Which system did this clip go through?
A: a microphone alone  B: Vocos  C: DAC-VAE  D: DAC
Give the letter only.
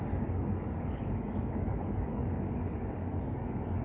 D